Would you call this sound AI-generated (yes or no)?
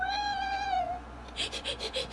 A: yes